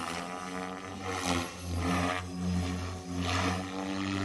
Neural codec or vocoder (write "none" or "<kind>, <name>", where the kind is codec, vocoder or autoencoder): none